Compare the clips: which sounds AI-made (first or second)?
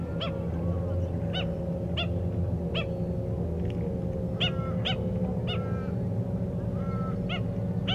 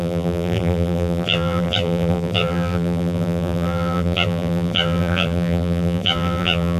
second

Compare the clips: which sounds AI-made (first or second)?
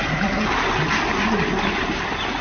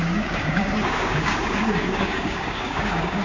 second